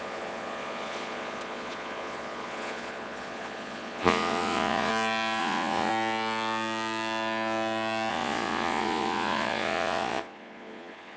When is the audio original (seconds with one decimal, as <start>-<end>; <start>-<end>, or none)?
4.9-5.4; 5.9-8.1